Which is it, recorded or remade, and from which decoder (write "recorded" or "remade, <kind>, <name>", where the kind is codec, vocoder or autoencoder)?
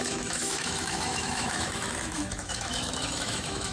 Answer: remade, autoencoder, DAC-VAE